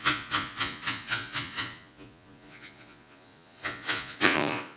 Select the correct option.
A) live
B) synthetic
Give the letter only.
B